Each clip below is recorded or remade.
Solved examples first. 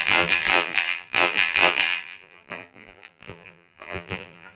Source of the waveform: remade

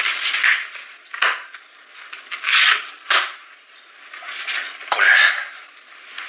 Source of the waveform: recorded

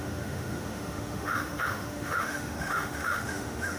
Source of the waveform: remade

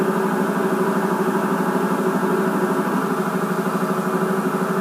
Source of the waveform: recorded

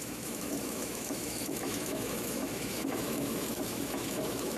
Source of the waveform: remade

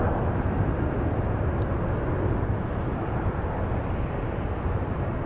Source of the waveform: recorded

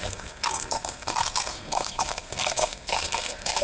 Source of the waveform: remade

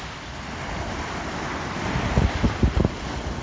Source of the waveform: recorded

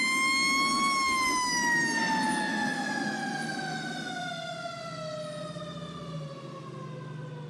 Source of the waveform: recorded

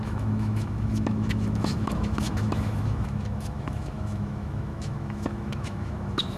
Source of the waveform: remade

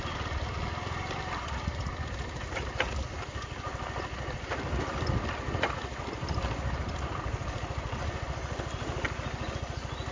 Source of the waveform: recorded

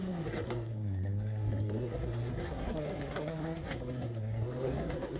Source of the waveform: remade